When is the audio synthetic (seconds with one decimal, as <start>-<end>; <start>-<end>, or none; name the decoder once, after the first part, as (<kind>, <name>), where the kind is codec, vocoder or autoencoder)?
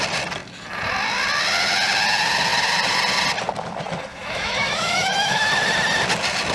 4.1-5.5 (autoencoder, DAC-VAE)